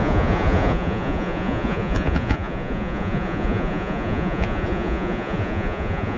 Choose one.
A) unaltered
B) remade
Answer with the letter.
B